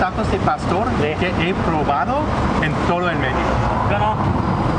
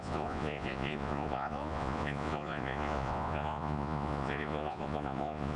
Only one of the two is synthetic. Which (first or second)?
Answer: second